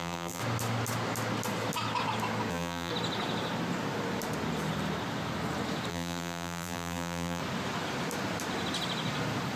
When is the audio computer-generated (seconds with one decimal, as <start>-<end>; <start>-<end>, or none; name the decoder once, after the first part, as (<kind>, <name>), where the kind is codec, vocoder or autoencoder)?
0.0-0.4 (vocoder, BigVGAN v2); 2.5-2.9; 5.9-7.4